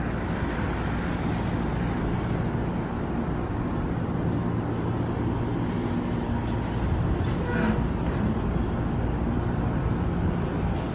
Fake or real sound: real